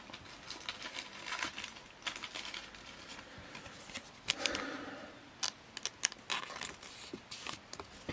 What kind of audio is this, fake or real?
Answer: real